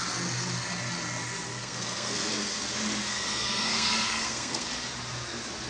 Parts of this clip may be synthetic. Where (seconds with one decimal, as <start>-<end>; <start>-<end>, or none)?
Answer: 1.5-2.3; 3.1-4.7